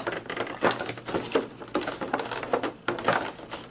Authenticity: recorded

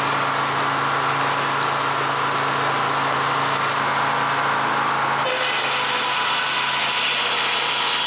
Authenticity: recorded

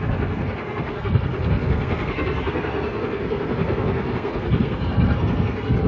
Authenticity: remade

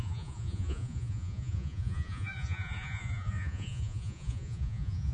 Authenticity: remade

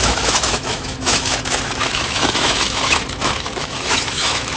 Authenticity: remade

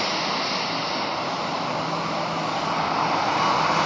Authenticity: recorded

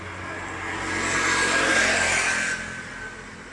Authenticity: recorded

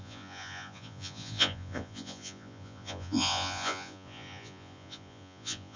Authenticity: remade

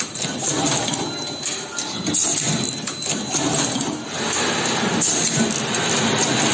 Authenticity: recorded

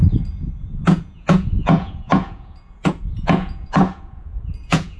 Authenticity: remade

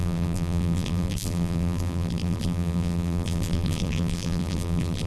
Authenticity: remade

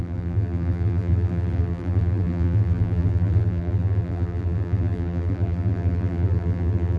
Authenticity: remade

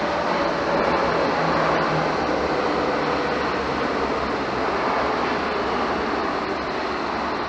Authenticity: recorded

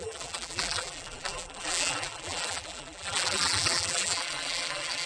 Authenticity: remade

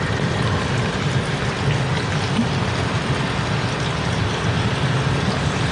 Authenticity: recorded